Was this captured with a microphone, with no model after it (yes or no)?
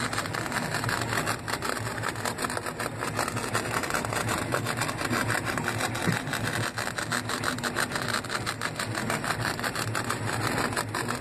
yes